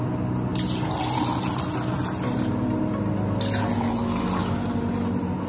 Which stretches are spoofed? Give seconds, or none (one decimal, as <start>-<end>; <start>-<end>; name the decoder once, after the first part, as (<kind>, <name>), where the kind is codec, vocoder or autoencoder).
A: none